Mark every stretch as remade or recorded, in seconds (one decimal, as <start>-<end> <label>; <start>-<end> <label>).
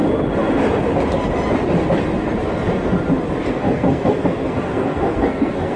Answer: 0.0-3.5 recorded; 3.5-5.8 remade